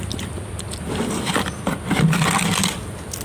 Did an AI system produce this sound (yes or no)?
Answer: no